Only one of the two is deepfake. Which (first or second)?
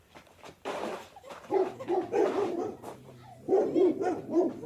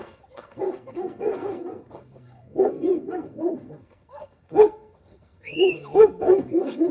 second